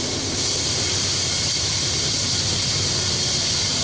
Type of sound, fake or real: real